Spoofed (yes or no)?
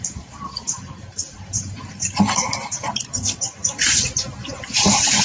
yes